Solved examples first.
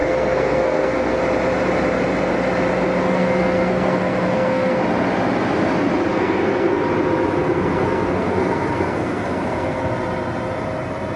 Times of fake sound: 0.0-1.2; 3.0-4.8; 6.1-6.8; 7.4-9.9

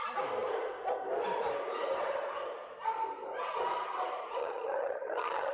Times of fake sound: 4.4-5.5

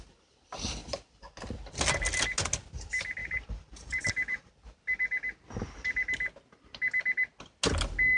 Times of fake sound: 3.2-4.5